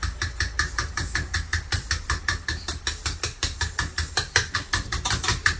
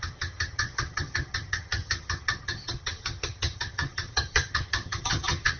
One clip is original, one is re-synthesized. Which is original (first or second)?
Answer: first